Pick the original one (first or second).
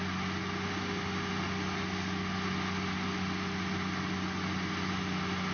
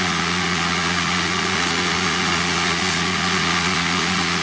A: first